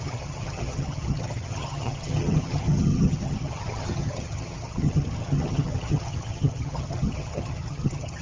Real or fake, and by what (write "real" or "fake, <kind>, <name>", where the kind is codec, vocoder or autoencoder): fake, vocoder, HiFi-GAN